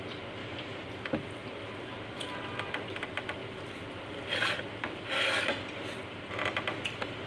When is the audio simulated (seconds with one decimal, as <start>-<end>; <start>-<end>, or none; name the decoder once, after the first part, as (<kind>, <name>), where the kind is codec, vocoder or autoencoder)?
0.4-0.9 (vocoder, BigVGAN v2); 1.4-2.6